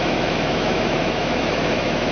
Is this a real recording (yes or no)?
no